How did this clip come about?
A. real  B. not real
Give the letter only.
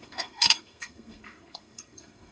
B